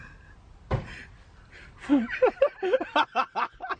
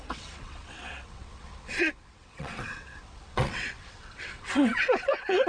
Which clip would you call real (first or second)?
first